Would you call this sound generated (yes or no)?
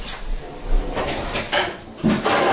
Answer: no